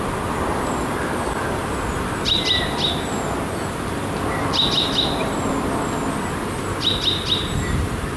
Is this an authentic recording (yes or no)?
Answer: yes